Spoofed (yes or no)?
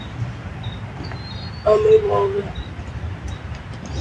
no